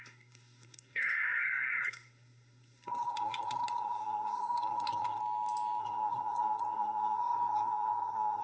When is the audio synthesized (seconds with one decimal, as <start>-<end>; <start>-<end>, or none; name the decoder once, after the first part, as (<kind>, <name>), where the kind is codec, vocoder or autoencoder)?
0.0-5.2 (codec, SNAC); 5.8-8.4